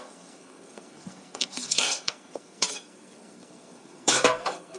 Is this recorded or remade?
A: remade